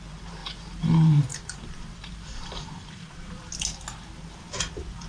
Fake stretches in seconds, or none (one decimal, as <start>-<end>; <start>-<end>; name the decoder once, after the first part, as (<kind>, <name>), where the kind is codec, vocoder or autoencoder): 0.4-3.5 (vocoder, BigVGAN v2)